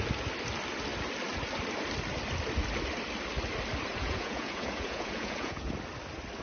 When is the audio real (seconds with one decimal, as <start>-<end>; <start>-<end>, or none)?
0.0-3.9; 5.7-6.4